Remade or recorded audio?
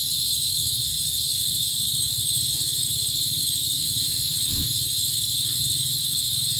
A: remade